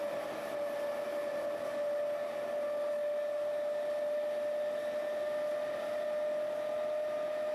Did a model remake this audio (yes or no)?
no